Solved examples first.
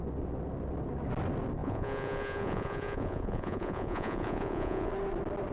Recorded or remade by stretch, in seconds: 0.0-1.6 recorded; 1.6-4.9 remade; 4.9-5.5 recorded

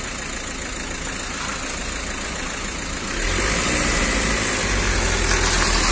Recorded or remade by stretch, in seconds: 0.0-5.9 recorded

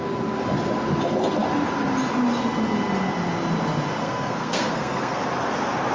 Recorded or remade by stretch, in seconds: 0.0-4.0 recorded; 4.0-5.2 remade; 5.2-5.9 recorded